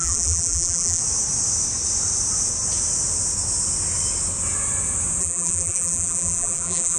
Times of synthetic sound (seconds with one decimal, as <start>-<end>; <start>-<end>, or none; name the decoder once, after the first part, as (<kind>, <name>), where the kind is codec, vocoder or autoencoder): 0.0-1.0 (vocoder, BigVGAN v2); 5.2-7.0